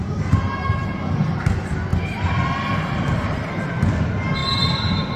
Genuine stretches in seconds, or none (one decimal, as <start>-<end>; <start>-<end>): 0.0-1.9; 2.8-4.4